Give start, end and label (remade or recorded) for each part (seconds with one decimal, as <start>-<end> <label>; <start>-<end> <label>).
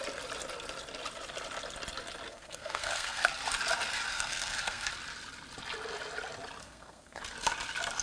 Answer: 0.0-2.3 recorded; 2.3-3.3 remade; 3.3-4.1 recorded; 4.1-4.9 remade; 4.9-6.6 recorded; 6.6-7.2 remade; 7.2-8.0 recorded